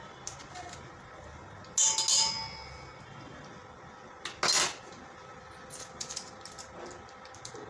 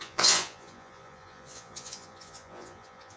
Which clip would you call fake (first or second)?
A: second